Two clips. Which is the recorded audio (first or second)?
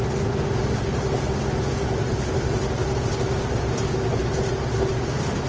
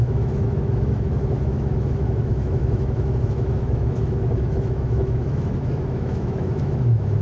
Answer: first